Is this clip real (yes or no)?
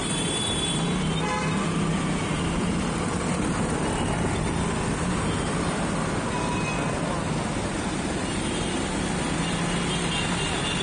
yes